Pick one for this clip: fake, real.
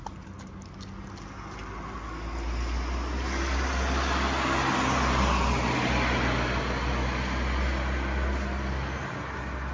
real